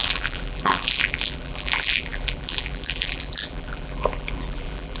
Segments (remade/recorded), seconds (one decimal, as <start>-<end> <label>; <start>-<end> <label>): 0.0-5.0 remade